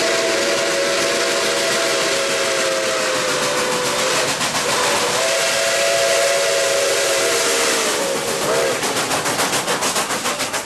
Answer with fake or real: real